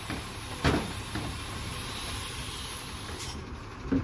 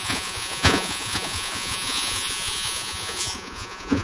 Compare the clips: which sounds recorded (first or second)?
first